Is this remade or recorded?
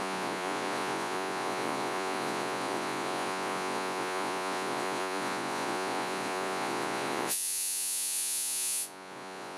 remade